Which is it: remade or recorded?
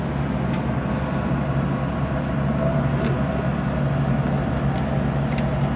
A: recorded